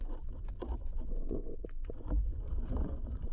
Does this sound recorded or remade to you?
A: remade